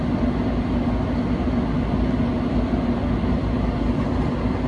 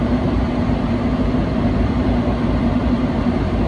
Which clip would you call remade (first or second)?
second